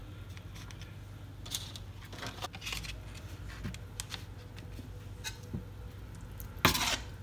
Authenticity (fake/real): real